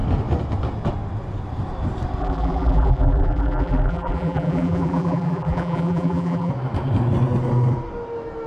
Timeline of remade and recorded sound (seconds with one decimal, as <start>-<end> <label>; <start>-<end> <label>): 0.0-2.2 recorded; 2.2-6.5 remade; 6.5-8.5 recorded